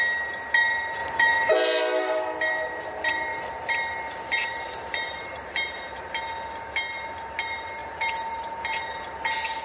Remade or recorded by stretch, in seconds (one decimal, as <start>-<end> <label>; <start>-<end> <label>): 0.0-1.0 recorded; 1.0-1.5 remade; 1.5-3.3 recorded; 3.3-6.1 remade; 6.1-7.8 recorded; 7.8-9.0 remade; 9.0-9.6 recorded